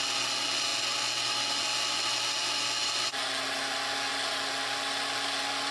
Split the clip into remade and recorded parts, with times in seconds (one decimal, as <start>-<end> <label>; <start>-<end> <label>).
0.0-5.7 recorded